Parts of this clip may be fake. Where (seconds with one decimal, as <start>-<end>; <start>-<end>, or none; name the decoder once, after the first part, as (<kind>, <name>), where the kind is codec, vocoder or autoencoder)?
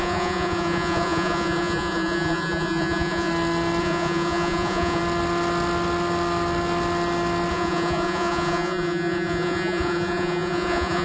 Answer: 0.0-3.3 (vocoder, Vocos); 3.8-5.0; 7.5-11.0